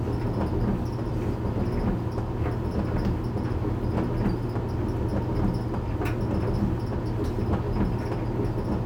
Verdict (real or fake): real